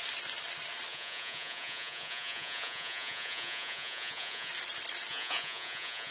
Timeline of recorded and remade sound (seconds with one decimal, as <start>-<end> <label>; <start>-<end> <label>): 0.0-0.9 recorded; 0.9-4.5 remade; 4.5-5.1 recorded; 5.1-6.1 remade